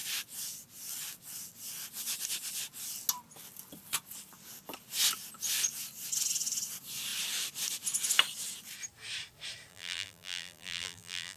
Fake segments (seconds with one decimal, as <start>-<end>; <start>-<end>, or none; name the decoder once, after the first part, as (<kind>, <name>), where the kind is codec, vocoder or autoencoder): 9.7-11.4 (vocoder, BigVGAN v2)